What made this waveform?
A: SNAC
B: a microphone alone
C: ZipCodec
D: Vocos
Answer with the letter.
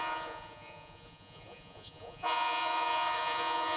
D